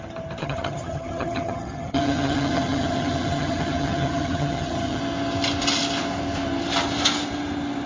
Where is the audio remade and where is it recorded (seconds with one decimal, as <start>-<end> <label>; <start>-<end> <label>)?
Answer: 0.0-0.4 recorded; 0.4-5.0 remade; 5.0-7.9 recorded